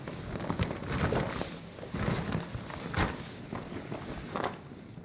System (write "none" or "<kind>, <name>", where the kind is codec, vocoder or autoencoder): none